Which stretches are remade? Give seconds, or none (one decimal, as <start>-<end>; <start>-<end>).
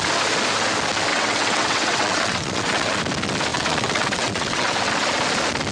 1.1-3.0; 3.5-4.9